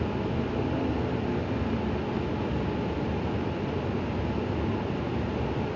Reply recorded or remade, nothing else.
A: recorded